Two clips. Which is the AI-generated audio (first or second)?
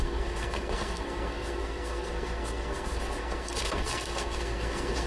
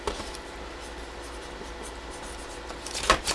first